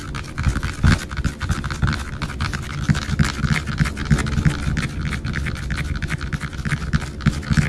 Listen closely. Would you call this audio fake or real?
real